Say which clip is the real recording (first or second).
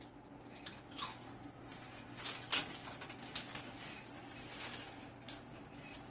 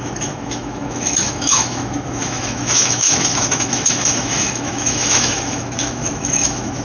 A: first